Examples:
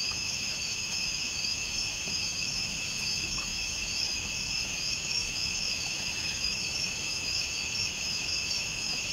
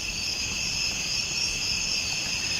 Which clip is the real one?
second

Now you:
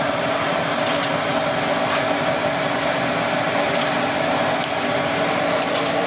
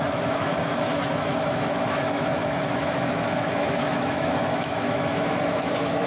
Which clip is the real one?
first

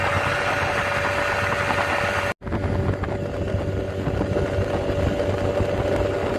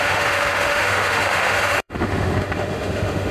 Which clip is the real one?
first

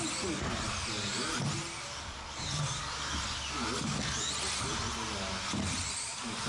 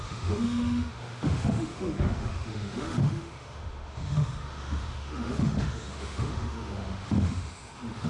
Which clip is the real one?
first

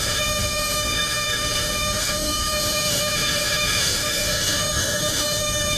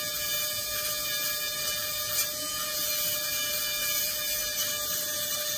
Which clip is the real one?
second